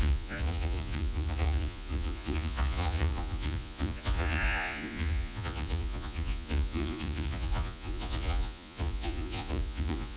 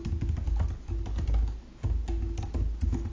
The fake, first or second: first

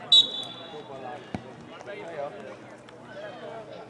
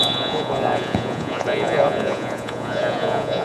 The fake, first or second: second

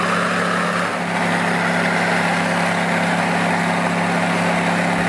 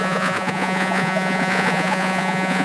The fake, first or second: second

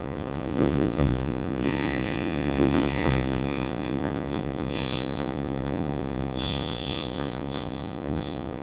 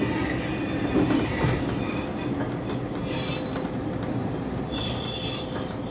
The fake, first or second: first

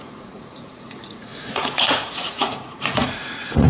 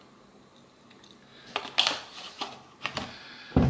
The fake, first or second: first